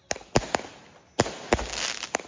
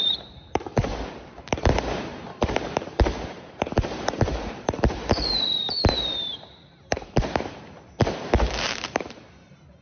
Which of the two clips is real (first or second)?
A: first